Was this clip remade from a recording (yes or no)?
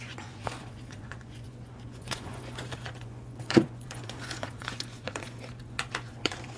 yes